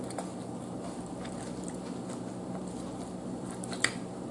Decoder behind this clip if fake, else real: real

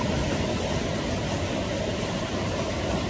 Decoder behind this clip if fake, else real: real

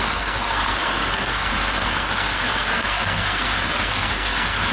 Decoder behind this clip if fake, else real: fake, codec, SNAC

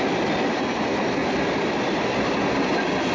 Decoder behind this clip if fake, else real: real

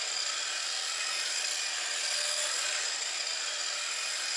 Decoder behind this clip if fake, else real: real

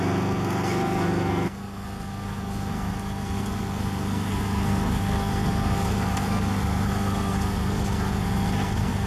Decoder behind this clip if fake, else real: fake, codec, SNAC